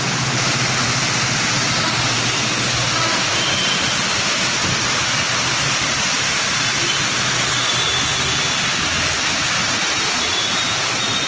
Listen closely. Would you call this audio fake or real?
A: real